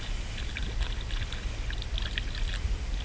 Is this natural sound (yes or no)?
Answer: yes